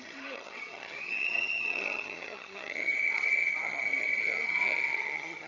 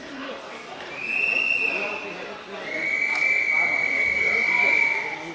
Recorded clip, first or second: second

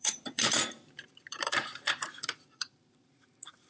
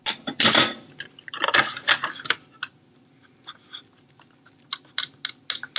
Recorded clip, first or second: second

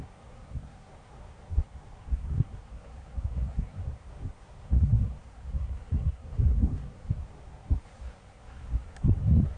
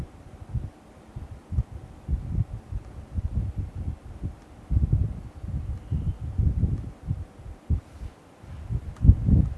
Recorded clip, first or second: second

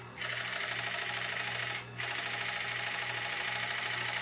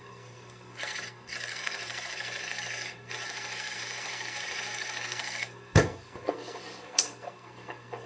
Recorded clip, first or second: first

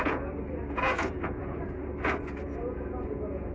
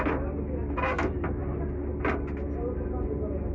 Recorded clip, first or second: second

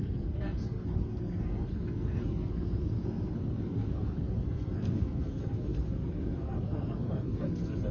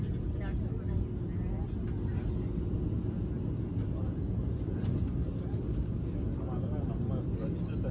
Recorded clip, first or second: second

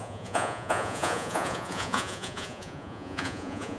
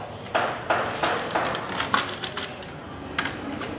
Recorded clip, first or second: second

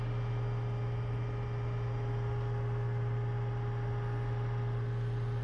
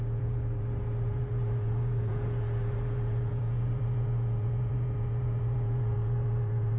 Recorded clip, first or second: first